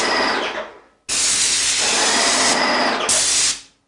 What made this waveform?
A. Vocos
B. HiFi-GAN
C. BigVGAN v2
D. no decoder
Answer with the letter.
D